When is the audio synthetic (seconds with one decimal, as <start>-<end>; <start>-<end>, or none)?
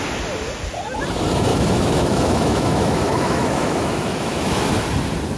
1.5-4.7